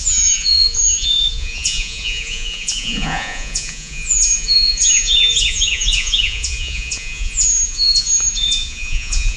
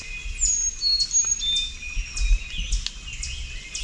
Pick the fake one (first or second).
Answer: first